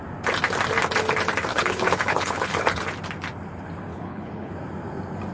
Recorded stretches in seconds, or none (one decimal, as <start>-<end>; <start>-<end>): 0.0-1.5; 2.8-3.9; 4.5-5.3